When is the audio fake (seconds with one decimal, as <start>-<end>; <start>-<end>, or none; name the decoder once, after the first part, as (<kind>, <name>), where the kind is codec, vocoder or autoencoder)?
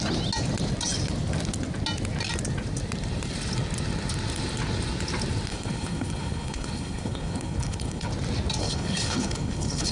5.5-8.1 (codec, HILCodec); 8.6-9.9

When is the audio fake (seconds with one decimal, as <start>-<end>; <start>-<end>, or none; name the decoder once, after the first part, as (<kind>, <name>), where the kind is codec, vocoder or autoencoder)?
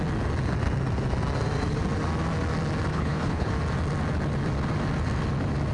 2.9-3.5 (codec, HILCodec)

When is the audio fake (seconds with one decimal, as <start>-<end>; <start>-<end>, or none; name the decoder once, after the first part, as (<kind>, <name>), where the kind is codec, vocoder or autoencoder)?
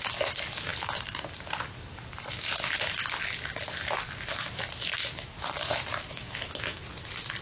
6.1-6.8 (autoencoder, DAC-VAE)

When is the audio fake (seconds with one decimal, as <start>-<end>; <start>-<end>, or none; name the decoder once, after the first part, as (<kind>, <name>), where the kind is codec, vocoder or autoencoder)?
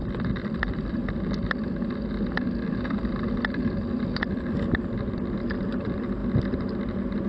0.0-1.0 (vocoder, BigVGAN v2); 2.7-6.2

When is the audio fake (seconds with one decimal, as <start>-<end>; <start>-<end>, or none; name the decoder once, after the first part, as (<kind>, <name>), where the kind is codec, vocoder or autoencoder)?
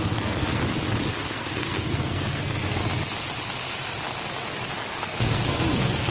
0.0-0.6 (codec, SNAC); 1.2-2.8; 5.0-6.1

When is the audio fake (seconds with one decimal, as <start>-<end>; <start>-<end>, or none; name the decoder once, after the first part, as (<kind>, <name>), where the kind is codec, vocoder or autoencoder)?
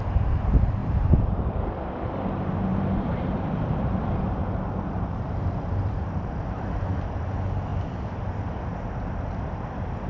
0.8-1.4 (vocoder, BigVGAN v2); 2.7-7.3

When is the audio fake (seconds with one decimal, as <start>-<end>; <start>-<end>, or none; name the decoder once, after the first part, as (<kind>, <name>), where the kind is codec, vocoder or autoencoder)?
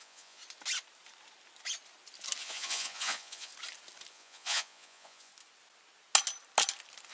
0.0-0.4 (vocoder, Vocos); 2.4-3.5; 4.1-5.3